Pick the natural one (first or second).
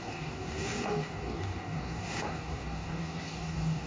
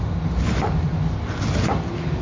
second